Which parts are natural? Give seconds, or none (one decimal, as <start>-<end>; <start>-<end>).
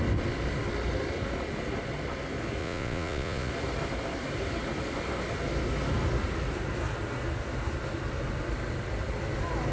0.0-2.6; 3.5-9.7